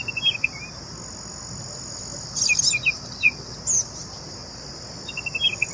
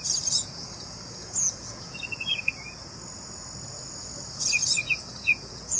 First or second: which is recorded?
first